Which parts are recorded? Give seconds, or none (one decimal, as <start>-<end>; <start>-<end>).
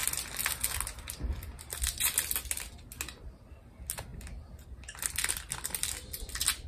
0.0-6.7